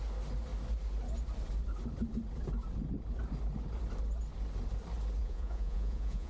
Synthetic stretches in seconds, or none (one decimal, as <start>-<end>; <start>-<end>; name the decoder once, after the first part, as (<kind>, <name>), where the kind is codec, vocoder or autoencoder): 5.2-6.3 (vocoder, Vocos)